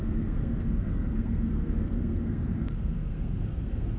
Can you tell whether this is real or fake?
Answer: fake